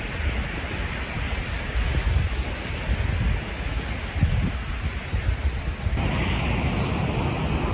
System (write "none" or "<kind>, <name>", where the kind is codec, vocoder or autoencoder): none